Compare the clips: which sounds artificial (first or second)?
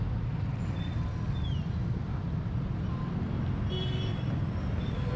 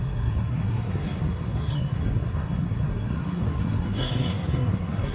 second